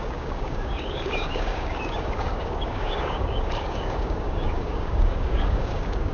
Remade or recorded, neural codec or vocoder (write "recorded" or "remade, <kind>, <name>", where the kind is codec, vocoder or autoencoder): remade, codec, DAC